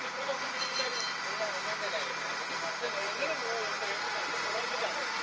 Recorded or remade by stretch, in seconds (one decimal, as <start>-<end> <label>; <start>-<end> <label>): 0.0-0.9 remade; 0.9-4.0 recorded; 4.0-5.2 remade